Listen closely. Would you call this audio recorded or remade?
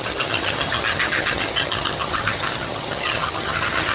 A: remade